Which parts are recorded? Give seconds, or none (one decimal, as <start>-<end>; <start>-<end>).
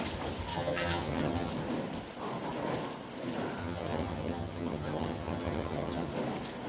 0.0-0.5; 1.5-3.6; 6.1-6.7